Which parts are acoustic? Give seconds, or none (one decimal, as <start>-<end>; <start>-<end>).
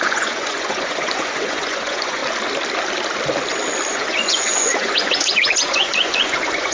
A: 2.2-3.9